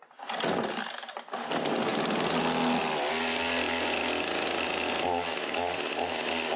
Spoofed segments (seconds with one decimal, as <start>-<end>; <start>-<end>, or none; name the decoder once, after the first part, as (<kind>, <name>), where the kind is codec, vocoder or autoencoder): none